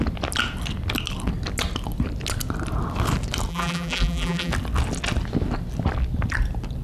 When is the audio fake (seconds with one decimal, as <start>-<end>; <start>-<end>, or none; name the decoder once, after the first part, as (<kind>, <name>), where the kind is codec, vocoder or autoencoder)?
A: 3.5-4.5 (vocoder, BigVGAN v2)